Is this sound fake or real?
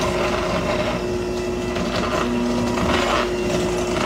real